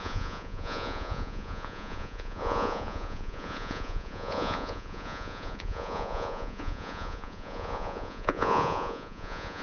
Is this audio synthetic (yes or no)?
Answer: yes